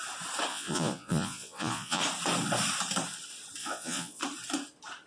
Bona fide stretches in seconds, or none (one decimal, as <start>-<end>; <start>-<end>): 0.0-0.5; 2.0-3.6; 4.2-5.1